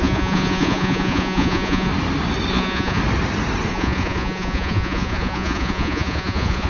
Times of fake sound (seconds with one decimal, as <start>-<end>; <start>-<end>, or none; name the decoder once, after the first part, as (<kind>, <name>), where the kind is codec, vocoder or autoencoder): 0.0-1.9 (vocoder, Vocos); 2.5-3.0; 3.7-6.7